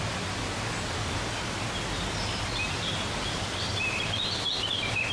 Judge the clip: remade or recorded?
recorded